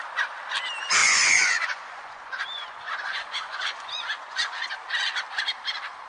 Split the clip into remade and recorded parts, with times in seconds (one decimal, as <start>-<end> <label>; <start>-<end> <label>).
0.0-1.0 recorded; 1.0-4.7 remade; 4.7-6.1 recorded